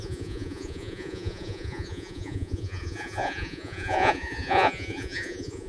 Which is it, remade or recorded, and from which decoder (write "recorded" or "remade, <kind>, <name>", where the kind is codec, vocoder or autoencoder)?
remade, vocoder, Vocos